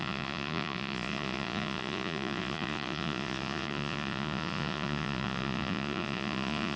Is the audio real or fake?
fake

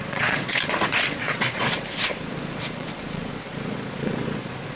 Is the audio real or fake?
fake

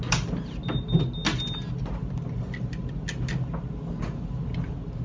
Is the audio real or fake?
real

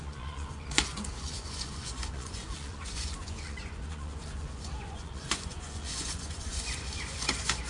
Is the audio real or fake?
fake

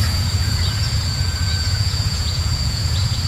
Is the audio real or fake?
fake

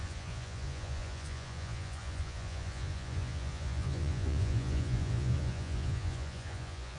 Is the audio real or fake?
fake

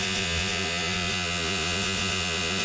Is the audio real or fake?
fake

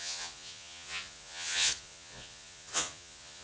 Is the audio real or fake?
fake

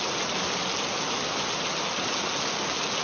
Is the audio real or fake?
real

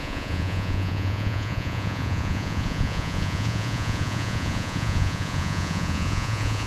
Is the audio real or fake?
fake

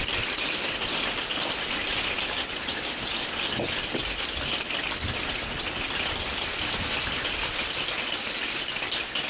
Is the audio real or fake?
real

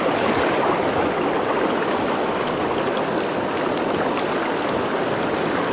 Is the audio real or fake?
real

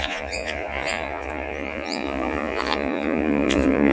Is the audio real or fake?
fake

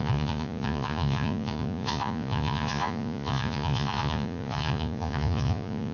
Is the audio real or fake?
fake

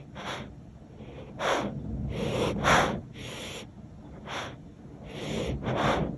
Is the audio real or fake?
real